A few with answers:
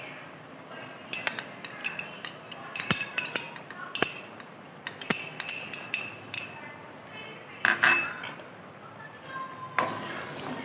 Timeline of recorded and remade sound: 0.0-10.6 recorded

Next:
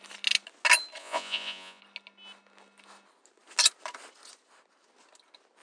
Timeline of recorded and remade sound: 0.0-1.0 recorded; 1.0-1.8 remade; 1.8-5.6 recorded

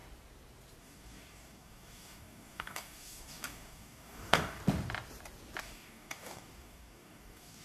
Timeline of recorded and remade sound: 0.0-0.8 recorded; 0.8-4.6 remade; 4.6-5.6 recorded; 5.6-7.6 remade

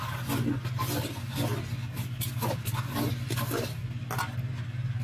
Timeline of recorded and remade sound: 0.0-5.0 recorded